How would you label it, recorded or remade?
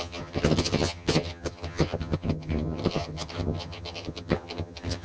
remade